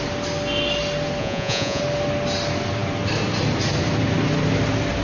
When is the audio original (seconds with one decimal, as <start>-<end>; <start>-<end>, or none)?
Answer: 0.0-1.2; 1.8-5.0